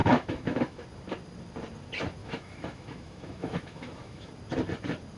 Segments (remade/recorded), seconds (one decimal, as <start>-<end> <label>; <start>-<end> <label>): 0.0-0.8 remade; 0.8-2.2 recorded; 2.2-4.3 remade; 4.3-5.2 recorded